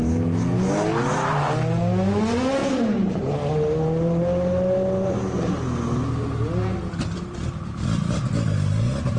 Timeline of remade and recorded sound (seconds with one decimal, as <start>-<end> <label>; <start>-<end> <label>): 0.0-2.6 recorded; 2.6-3.3 remade; 3.3-5.0 recorded; 5.0-5.5 remade; 5.5-9.2 recorded